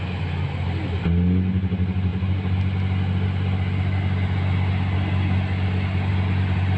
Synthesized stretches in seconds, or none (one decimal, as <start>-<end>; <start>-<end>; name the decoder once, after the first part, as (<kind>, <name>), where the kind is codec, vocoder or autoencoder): none